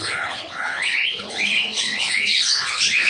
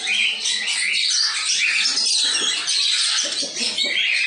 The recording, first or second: second